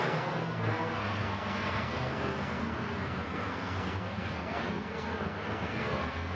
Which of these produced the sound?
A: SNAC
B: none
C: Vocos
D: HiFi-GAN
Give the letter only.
A